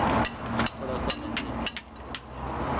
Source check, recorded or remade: recorded